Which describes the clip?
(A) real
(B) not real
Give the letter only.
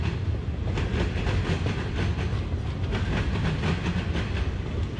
A